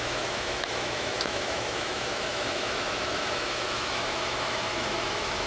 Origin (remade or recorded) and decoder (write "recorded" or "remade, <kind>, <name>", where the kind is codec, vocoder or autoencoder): remade, autoencoder, DAC-VAE